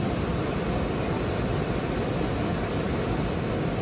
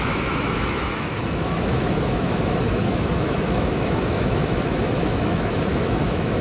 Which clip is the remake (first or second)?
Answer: second